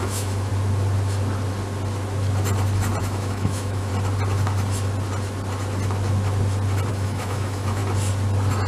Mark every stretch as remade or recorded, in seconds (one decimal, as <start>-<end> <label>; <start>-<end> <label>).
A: 0.0-0.5 remade; 0.5-3.0 recorded; 3.0-3.9 remade; 3.9-6.9 recorded; 6.9-7.8 remade; 7.8-8.7 recorded